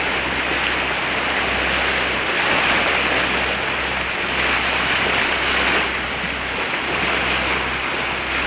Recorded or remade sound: recorded